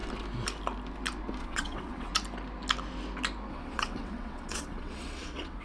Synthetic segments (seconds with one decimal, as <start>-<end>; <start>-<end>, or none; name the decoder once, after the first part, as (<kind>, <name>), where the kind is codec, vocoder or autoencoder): 1.4-2.1 (vocoder, WaveNeXt); 3.5-5.6